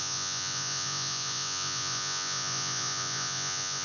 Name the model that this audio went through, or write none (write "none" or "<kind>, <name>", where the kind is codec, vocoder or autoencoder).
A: vocoder, Vocos